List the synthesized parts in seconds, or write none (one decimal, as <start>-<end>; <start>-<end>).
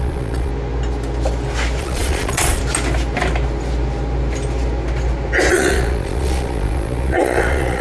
0.0-0.5; 1.8-2.6; 5.5-7.8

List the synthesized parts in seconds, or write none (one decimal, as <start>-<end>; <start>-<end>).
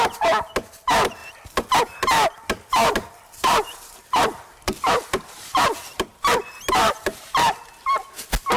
2.8-7.5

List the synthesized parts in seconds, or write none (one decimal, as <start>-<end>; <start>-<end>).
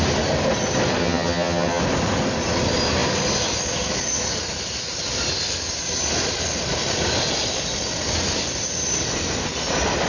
1.0-1.8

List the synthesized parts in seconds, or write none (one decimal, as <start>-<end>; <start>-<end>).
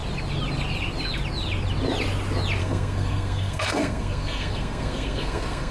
2.6-5.7